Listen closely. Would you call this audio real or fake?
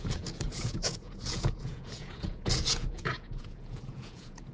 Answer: fake